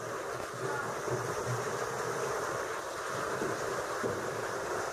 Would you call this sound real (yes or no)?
yes